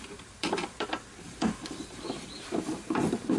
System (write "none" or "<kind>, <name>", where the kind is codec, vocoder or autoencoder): vocoder, BigVGAN v2